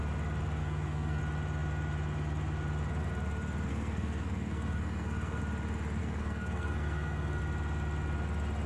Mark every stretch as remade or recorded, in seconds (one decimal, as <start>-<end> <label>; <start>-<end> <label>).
0.0-0.6 recorded; 0.6-1.2 remade; 1.2-3.7 recorded; 3.7-5.4 remade; 5.4-6.0 recorded; 6.0-7.4 remade; 7.4-8.7 recorded